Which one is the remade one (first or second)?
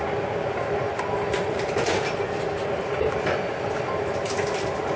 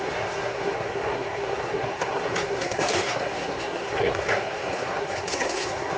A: second